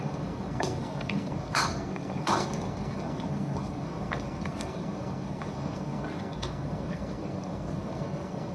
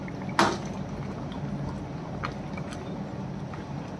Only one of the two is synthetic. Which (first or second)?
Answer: first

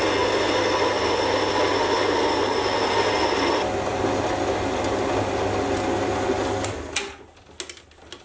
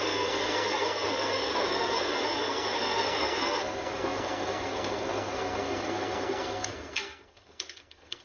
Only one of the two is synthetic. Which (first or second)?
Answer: second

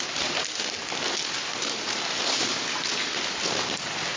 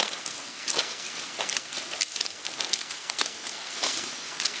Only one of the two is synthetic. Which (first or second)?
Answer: second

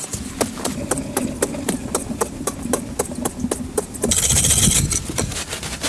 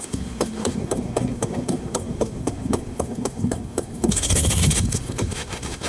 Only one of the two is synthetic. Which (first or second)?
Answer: second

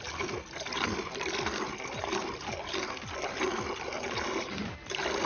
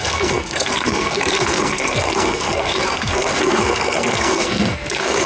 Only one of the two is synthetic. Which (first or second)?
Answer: second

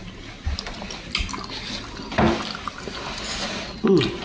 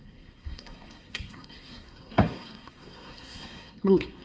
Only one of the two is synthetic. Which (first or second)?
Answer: second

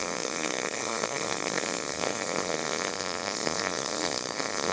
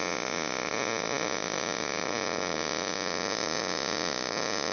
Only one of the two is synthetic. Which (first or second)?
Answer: first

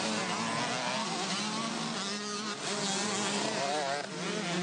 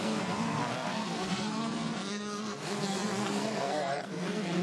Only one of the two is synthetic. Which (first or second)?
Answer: second